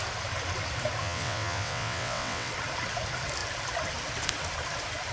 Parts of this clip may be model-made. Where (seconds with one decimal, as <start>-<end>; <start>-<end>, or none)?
1.0-2.5